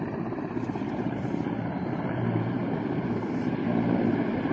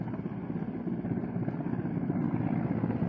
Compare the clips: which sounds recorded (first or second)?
second